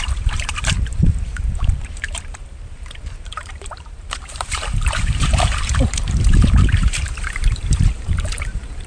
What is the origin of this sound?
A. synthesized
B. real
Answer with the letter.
A